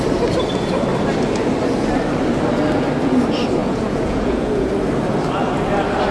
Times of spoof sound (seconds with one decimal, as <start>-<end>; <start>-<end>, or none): 3.6-4.7